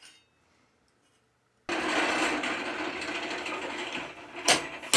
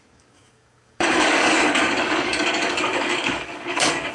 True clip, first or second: first